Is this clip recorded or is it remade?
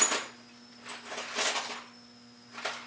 recorded